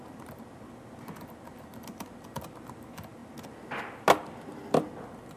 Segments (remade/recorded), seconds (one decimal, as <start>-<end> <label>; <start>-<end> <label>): 0.0-5.4 recorded